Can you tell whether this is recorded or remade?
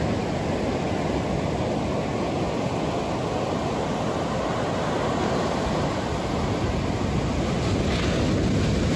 recorded